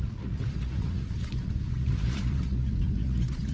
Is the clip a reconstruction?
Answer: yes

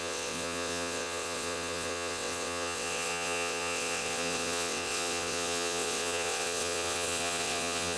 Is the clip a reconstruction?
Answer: yes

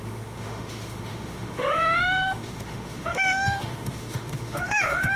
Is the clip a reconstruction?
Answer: yes